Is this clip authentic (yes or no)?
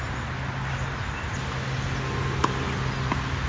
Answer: yes